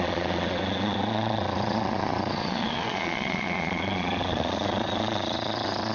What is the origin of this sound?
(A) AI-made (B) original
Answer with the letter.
A